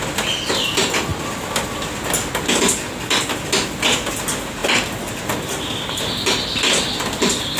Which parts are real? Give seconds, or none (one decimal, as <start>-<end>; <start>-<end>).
0.0-7.6